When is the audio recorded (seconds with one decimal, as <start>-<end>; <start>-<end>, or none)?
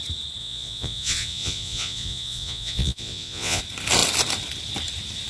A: 0.0-0.4; 3.6-5.3